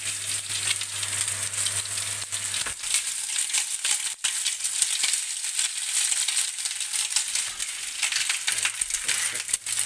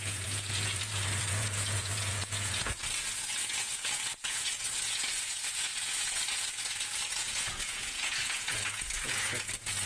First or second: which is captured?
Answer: first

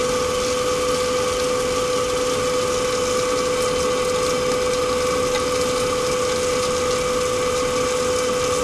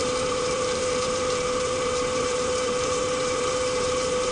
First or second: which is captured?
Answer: first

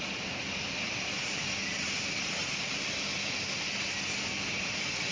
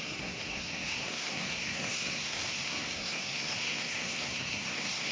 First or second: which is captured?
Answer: first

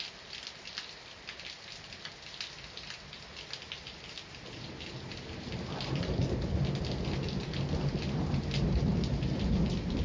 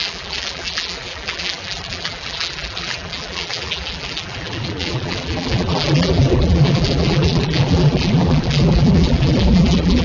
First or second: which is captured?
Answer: first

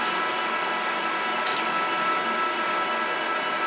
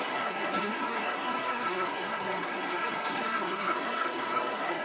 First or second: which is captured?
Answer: first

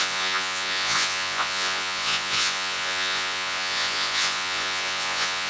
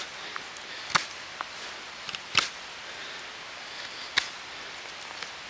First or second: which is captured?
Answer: second